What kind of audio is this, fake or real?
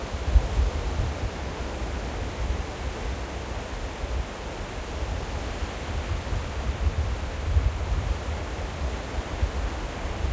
real